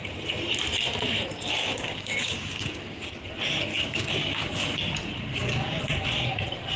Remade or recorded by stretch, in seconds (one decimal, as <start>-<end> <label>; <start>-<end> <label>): 0.0-1.6 recorded; 1.6-3.1 remade; 3.1-3.7 recorded; 3.7-4.4 remade; 4.4-5.3 recorded; 5.3-5.8 remade; 5.8-6.8 recorded